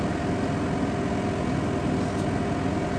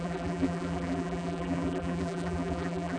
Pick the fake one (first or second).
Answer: second